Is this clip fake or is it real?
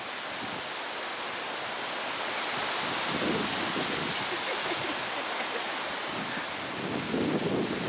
real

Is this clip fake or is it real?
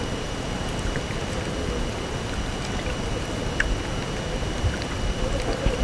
real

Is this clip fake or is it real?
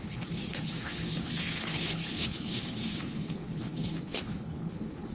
fake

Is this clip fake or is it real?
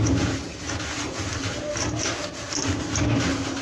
real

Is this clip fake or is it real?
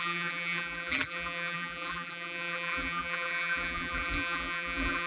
fake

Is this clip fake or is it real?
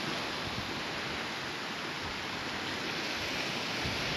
real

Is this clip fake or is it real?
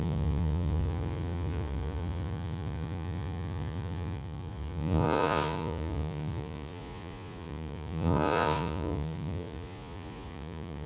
fake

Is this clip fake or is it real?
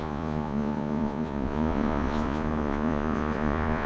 fake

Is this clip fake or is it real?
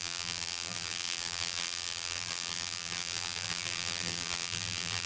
fake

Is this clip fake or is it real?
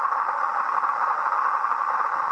real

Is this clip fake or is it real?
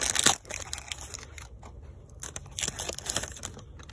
real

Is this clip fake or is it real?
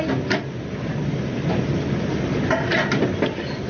real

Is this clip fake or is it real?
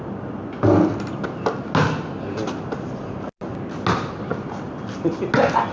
real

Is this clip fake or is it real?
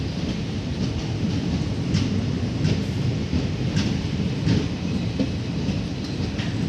real